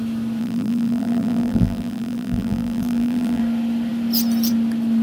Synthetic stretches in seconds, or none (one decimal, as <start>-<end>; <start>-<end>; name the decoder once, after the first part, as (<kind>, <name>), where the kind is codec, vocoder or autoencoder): 0.4-3.4 (vocoder, BigVGAN v2)